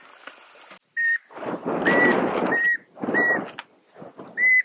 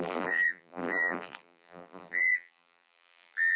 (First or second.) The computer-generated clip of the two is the second